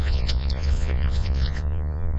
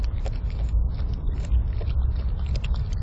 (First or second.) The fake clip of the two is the first